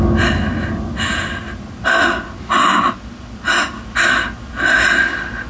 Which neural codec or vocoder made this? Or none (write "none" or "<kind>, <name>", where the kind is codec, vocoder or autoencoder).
none